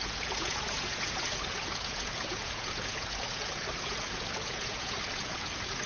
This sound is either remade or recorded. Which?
remade